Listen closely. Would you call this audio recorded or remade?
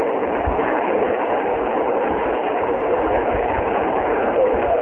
remade